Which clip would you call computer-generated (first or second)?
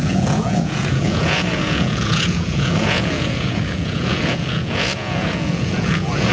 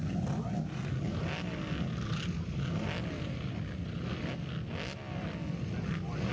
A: first